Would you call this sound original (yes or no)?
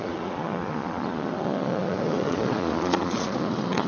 no